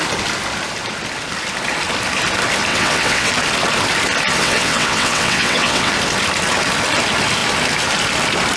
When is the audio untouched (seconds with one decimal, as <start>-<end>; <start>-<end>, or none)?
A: 0.0-2.7; 3.3-4.4; 5.9-8.6